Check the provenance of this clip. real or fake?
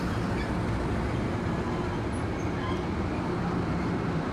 real